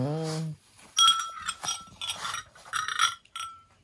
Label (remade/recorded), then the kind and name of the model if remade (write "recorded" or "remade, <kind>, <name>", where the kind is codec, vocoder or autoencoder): recorded